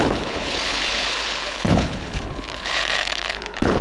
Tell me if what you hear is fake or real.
fake